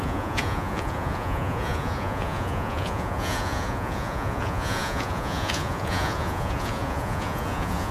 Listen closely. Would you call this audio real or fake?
fake